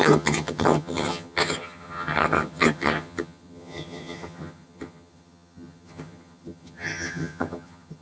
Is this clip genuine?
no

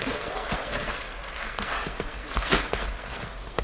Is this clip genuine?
no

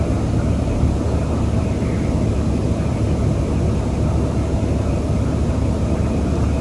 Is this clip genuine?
yes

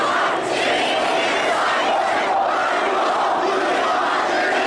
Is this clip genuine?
yes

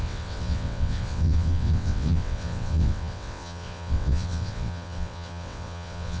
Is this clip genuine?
no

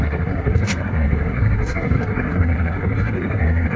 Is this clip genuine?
no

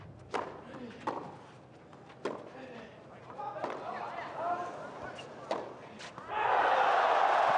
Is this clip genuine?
yes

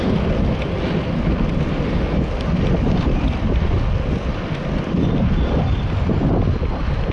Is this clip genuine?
yes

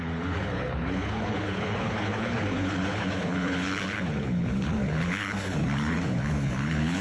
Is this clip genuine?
no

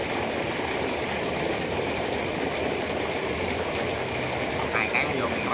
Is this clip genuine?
yes